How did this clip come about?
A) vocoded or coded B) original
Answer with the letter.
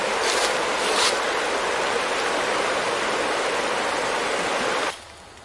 B